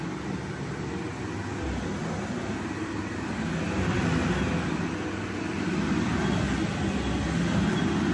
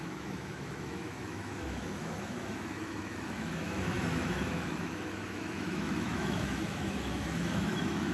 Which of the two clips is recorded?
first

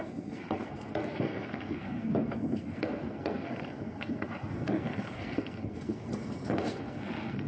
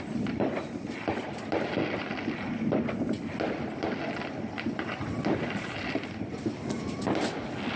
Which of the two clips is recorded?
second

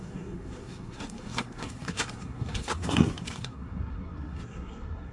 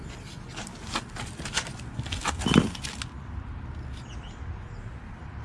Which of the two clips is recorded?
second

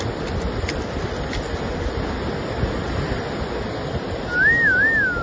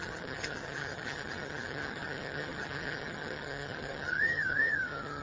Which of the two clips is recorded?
first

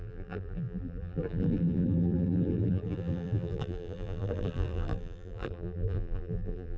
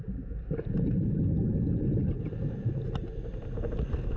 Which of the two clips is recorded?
second